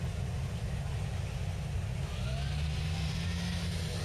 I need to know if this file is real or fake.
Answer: real